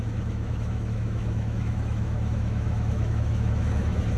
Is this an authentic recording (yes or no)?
no